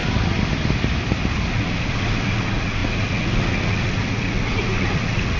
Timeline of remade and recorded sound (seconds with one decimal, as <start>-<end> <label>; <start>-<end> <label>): 0.0-1.5 recorded; 1.5-5.4 remade